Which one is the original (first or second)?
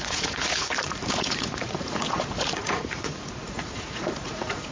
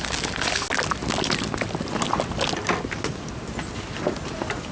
second